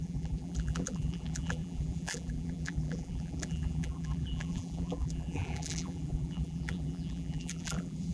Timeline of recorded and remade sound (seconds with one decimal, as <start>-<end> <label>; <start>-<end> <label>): 0.0-8.1 remade